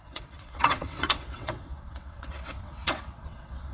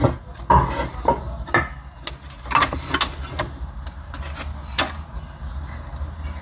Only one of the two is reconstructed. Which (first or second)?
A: first